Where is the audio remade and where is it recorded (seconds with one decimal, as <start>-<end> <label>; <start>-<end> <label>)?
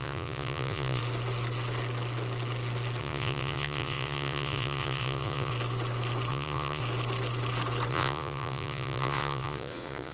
0.0-1.0 remade; 1.0-3.0 recorded; 3.0-5.5 remade; 5.5-6.3 recorded; 6.3-6.8 remade; 6.8-7.9 recorded; 7.9-10.1 remade